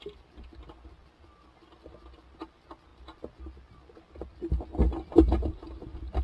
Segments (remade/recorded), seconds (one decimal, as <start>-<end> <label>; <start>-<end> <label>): 0.0-6.2 recorded